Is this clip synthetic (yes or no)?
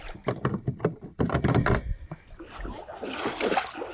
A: no